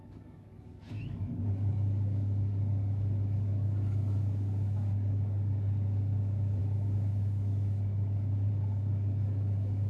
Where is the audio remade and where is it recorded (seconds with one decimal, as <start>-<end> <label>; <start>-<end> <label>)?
0.0-9.9 remade